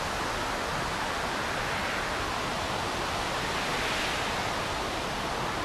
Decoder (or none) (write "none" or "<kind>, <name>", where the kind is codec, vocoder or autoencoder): none